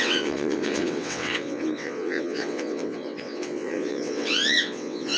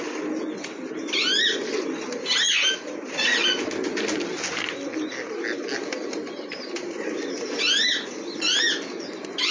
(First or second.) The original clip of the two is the second